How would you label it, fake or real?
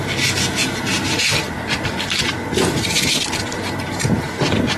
real